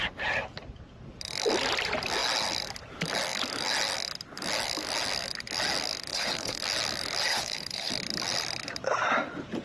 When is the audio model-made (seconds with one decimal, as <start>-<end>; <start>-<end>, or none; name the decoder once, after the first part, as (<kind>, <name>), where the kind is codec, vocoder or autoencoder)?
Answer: 6.1-6.6 (codec, HILCodec); 7.3-7.9